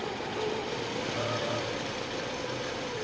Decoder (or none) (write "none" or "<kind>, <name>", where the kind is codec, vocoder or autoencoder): none